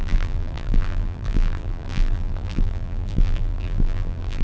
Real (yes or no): no